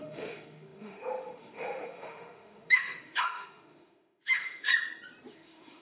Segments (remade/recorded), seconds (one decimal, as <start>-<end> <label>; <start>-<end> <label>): 0.0-4.7 remade; 4.7-5.3 recorded; 5.3-5.8 remade